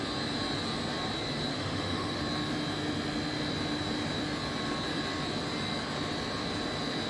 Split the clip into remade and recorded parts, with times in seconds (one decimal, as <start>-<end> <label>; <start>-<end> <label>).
0.0-1.5 recorded; 1.5-2.2 remade; 2.2-7.1 recorded